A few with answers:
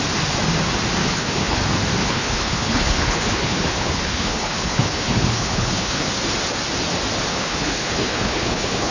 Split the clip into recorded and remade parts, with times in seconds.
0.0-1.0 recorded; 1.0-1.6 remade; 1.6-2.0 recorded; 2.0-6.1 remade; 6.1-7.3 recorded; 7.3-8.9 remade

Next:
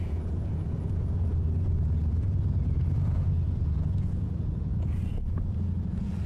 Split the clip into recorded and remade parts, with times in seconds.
0.0-6.3 remade